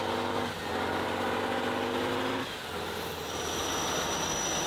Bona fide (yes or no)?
yes